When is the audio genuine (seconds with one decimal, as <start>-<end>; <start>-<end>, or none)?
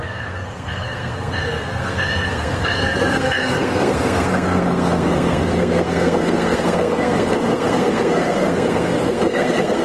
none